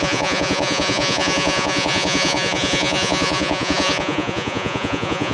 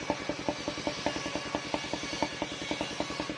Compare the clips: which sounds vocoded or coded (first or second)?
first